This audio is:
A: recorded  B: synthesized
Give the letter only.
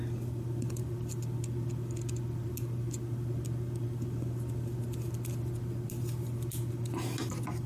A